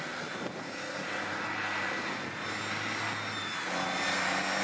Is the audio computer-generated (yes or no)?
no